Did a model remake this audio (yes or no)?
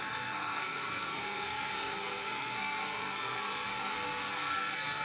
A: yes